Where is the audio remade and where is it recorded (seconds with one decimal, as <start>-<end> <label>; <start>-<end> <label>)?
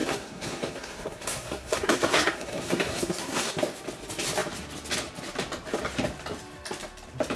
0.0-3.5 remade; 3.5-7.4 recorded